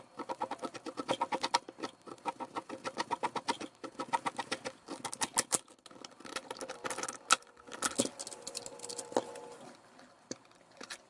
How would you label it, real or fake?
real